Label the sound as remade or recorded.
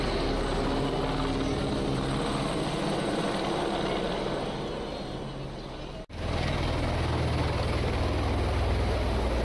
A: recorded